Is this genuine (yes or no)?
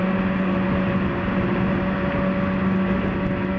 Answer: yes